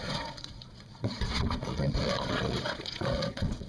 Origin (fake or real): fake